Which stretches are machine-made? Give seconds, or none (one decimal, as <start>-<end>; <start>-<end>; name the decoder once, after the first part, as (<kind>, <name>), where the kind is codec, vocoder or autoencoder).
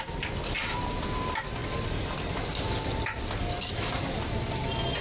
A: none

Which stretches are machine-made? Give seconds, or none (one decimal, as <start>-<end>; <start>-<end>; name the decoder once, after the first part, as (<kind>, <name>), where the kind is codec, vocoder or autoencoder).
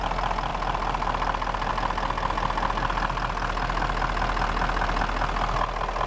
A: none